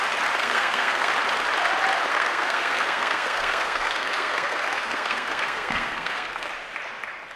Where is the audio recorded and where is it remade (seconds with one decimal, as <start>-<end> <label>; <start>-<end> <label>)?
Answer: 0.0-0.4 recorded; 0.4-1.1 remade; 1.1-2.1 recorded; 2.1-6.5 remade; 6.5-7.4 recorded

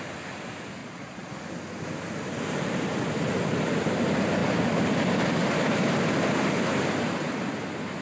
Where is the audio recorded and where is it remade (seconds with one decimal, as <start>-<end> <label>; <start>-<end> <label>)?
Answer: 0.0-0.8 recorded; 0.8-1.3 remade; 1.3-8.0 recorded